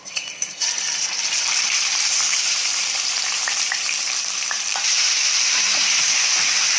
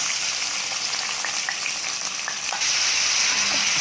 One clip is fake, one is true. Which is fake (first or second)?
first